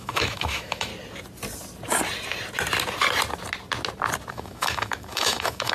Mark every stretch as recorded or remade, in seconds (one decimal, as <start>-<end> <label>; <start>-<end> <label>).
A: 0.0-0.9 remade; 0.9-4.3 recorded; 4.3-5.7 remade